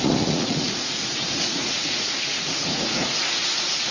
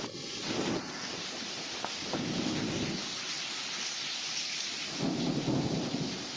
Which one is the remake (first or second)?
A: first